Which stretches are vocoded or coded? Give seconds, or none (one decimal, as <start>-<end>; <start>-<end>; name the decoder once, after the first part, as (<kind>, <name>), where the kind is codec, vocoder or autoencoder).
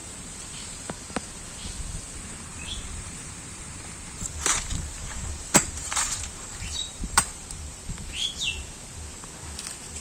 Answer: 0.0-0.9 (vocoder, BigVGAN v2); 2.5-7.8